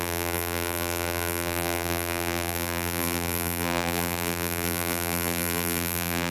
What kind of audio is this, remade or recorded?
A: remade